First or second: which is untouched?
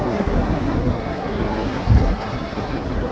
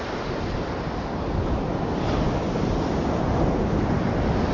second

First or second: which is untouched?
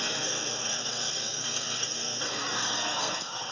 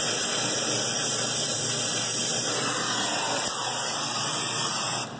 second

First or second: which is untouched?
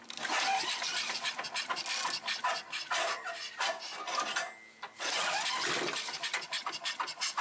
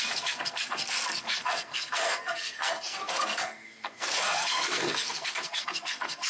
first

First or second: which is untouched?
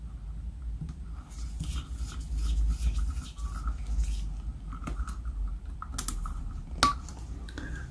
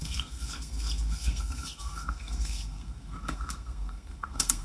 first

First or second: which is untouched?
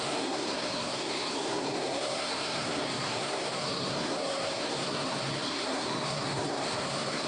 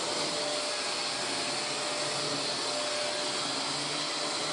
second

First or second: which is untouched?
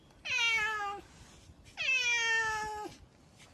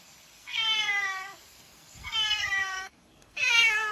first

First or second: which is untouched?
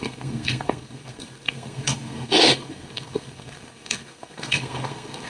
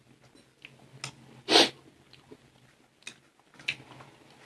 second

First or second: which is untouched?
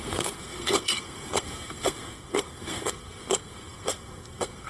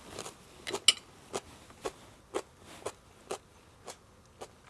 second